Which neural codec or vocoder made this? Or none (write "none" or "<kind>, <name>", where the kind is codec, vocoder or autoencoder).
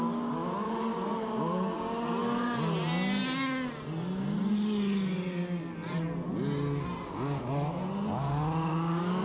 none